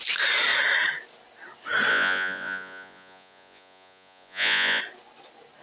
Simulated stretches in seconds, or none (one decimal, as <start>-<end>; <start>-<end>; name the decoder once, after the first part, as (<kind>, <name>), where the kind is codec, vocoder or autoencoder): 1.9-4.8 (vocoder, Vocos)